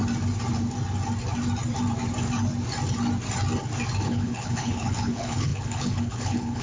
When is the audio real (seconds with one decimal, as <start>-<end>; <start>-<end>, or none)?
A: 0.0-4.0